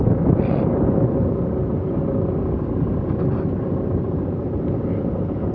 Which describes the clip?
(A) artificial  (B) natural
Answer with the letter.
B